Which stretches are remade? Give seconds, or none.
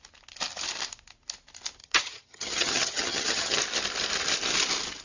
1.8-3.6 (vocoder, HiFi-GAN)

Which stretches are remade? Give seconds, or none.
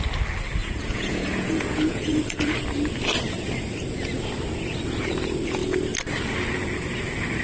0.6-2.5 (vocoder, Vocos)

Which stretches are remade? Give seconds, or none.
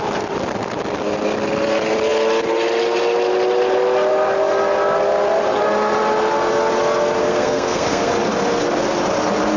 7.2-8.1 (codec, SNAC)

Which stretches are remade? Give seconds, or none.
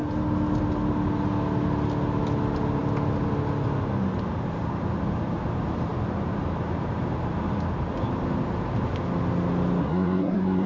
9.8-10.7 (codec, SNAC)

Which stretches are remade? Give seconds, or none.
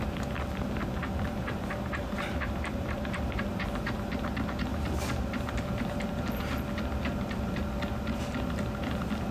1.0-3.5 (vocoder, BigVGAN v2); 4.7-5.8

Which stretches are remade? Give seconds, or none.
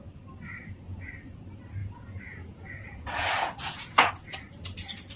1.8-4.1 (vocoder, Vocos)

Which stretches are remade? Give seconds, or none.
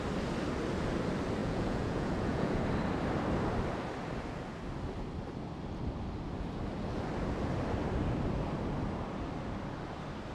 1.4-2.6 (vocoder, Vocos)